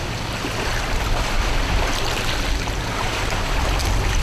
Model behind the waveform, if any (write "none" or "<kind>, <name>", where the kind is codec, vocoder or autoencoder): none